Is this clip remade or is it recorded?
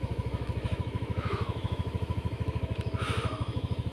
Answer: remade